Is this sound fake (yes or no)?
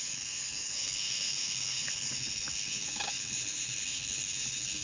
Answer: yes